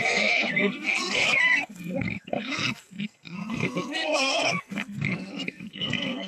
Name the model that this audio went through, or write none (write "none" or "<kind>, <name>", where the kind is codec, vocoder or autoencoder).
codec, SNAC